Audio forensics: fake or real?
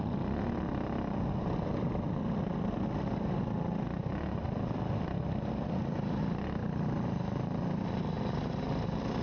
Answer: real